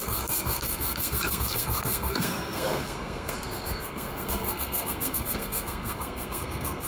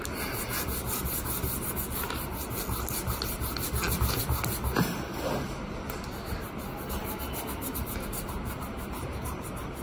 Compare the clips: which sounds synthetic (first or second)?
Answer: first